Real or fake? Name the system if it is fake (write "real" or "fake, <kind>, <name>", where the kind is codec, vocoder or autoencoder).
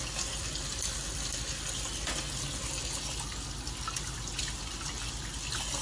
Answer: real